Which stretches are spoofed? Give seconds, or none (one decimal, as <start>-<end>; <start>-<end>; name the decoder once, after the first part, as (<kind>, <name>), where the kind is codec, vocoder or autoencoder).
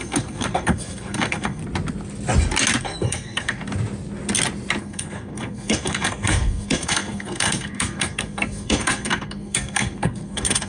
0.0-1.6 (codec, SNAC); 2.8-3.6; 4.8-10.7